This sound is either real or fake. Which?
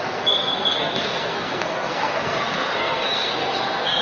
fake